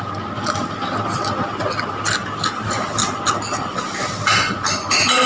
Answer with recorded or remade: recorded